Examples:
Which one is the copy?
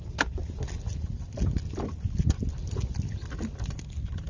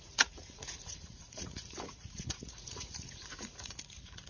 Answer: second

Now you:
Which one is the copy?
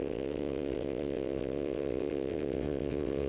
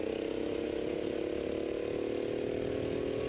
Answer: first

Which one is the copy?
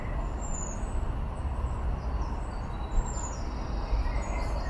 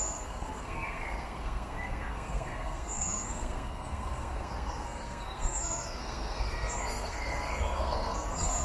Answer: second